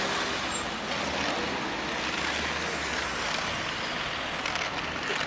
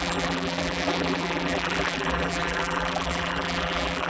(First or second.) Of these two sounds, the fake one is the second